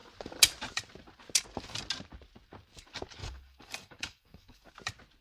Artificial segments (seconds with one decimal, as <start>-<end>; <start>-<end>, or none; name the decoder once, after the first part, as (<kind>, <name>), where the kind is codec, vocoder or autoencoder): 3.2-4.7 (codec, DAC)